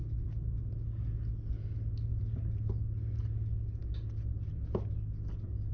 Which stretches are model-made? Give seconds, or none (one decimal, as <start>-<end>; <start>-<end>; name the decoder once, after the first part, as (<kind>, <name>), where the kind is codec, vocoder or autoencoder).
0.0-0.6 (vocoder, BigVGAN v2); 2.1-2.7